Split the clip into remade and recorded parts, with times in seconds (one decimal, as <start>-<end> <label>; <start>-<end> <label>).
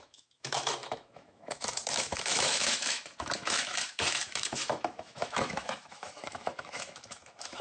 0.0-7.6 remade